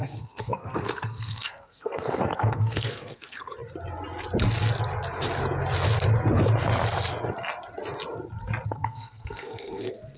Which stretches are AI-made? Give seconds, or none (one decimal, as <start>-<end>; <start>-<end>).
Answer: 0.0-3.5; 8.7-10.2